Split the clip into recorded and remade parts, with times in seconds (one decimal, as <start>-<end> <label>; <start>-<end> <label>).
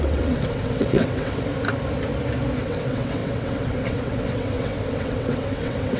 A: 0.0-1.5 remade; 1.5-2.6 recorded; 2.6-6.0 remade